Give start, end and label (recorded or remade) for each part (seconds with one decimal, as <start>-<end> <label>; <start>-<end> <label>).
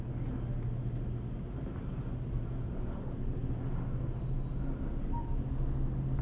0.0-6.2 recorded